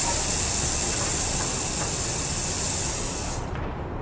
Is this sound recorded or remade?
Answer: recorded